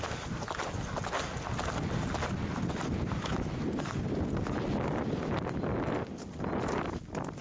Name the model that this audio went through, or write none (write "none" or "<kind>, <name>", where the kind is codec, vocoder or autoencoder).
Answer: none